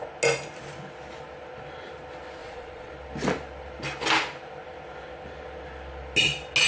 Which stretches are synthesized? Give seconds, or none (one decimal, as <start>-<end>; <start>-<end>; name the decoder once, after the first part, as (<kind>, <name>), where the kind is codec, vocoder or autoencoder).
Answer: 2.4-2.9 (vocoder, Vocos)